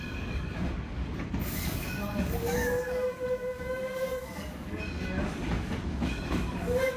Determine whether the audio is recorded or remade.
remade